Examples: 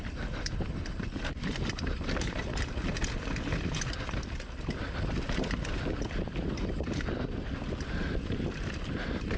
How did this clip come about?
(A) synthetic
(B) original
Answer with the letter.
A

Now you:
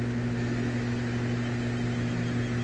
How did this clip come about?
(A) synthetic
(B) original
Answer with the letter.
B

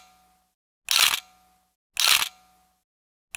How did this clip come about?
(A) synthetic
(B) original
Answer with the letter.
B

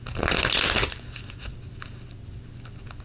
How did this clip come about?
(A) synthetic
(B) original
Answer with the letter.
B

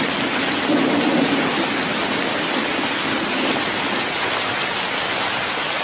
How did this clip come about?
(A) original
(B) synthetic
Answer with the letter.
A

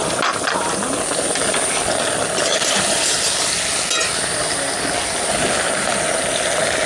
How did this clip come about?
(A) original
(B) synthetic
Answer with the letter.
A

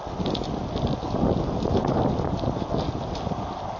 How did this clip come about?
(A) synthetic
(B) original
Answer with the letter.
B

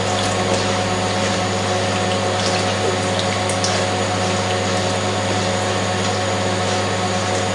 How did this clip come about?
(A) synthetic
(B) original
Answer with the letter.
B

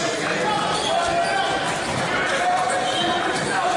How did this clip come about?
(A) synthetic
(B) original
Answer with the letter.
B